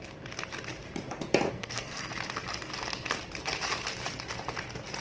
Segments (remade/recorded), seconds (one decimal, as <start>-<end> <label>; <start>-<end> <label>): 0.0-1.5 recorded; 1.5-2.1 remade; 2.1-5.0 recorded